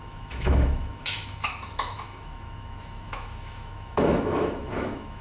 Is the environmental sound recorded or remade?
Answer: remade